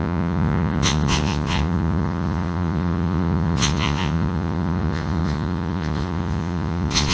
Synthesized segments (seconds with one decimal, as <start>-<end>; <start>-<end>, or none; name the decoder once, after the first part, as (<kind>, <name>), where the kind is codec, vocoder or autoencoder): 0.0-7.1 (vocoder, Vocos)